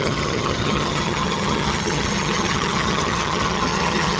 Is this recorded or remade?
remade